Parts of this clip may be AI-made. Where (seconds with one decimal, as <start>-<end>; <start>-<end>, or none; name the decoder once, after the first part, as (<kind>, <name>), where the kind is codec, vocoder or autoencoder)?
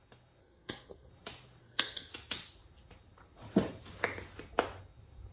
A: 0.4-1.1 (codec, SNAC); 1.6-2.1